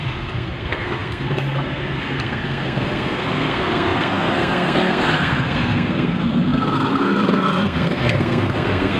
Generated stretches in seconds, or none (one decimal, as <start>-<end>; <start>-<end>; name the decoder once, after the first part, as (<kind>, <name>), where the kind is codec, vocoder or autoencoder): 0.0-9.0 (codec, SNAC)